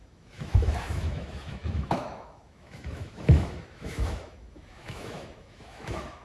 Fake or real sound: fake